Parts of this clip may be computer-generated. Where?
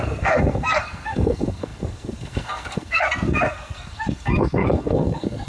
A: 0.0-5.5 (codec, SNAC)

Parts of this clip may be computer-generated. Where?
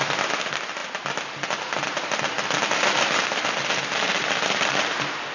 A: none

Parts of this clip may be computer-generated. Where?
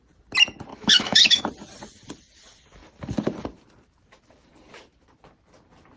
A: 0.7-1.4 (autoencoder, DAC-VAE)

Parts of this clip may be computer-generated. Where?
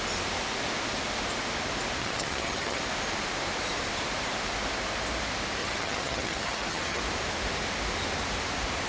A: 2.0-2.8 (vocoder, HiFi-GAN); 5.6-7.0